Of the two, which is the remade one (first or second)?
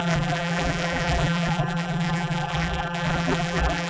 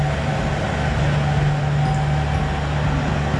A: first